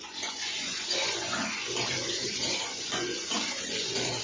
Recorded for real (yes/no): no